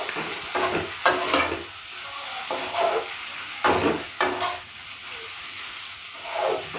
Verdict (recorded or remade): recorded